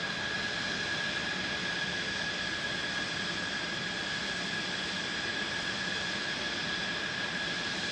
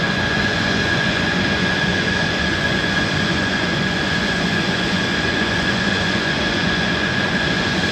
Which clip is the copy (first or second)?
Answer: second